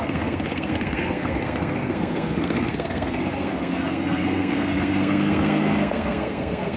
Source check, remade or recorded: remade